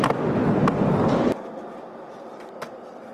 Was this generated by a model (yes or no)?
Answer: no